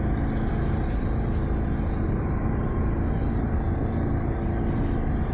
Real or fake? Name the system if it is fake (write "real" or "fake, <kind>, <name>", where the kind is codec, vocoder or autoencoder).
real